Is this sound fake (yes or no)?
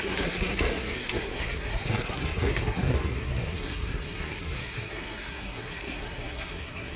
yes